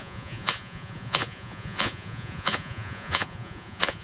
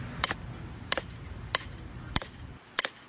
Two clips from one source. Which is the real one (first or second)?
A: second